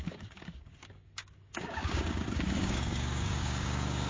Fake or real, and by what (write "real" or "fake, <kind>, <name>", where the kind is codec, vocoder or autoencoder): fake, codec, DAC